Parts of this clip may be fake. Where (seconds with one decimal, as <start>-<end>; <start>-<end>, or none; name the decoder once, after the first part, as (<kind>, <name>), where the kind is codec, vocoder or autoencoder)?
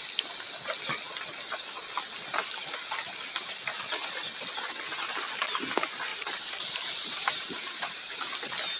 6.1-8.2 (vocoder, BigVGAN v2)